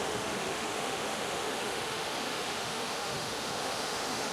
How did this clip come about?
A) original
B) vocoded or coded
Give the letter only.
B